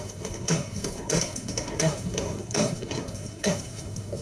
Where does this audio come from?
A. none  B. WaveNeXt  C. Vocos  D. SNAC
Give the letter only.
D